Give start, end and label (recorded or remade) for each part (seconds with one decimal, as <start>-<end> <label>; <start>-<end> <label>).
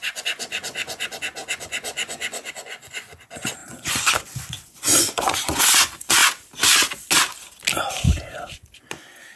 0.0-6.2 remade; 6.2-7.9 recorded; 7.9-9.4 remade